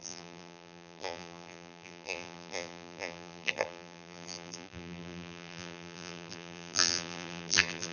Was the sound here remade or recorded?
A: remade